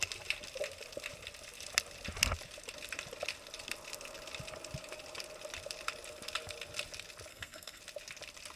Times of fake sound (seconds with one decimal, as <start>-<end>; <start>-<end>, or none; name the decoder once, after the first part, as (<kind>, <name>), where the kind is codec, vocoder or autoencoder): 7.3-7.8 (codec, SNAC)